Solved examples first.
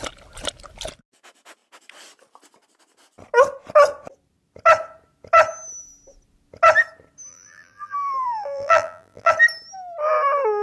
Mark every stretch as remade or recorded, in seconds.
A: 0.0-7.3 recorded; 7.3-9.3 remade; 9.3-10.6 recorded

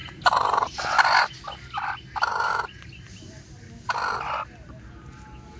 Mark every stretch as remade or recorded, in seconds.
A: 0.0-1.2 remade; 1.2-2.3 recorded; 2.3-2.9 remade; 2.9-5.6 recorded

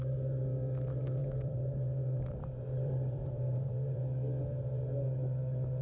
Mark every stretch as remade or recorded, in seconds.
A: 0.0-1.2 recorded; 1.2-4.0 remade; 4.0-5.8 recorded

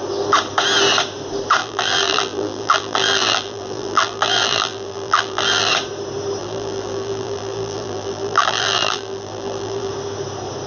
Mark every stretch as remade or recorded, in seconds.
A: 0.0-1.6 recorded; 1.6-5.7 remade; 5.7-6.4 recorded; 6.4-9.9 remade; 9.9-10.7 recorded

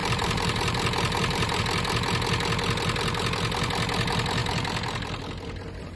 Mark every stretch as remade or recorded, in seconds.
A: 0.0-1.6 remade; 1.6-6.0 recorded

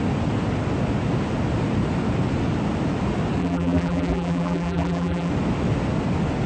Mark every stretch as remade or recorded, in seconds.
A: 0.0-3.4 recorded; 3.4-5.3 remade; 5.3-6.5 recorded